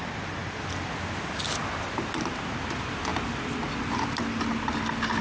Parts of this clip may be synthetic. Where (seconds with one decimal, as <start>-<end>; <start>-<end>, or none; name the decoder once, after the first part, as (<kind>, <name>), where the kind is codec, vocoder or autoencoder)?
none